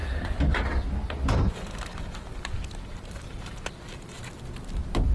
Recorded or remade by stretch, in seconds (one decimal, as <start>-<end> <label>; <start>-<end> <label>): 0.0-1.9 recorded; 1.9-3.7 remade; 3.7-5.1 recorded